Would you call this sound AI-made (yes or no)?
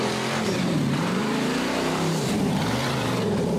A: yes